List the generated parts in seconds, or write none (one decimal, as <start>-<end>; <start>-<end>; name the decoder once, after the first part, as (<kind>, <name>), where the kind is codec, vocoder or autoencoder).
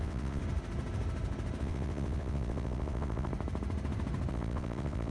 0.0-0.4 (vocoder, WaveNeXt); 1.6-3.3; 4.3-5.1